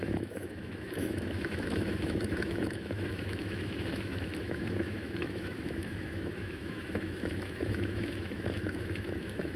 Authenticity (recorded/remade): remade